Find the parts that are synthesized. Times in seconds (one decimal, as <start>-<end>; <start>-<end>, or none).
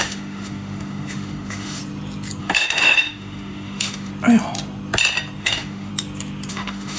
0.0-1.8; 2.4-4.1; 5.4-5.9; 6.5-7.0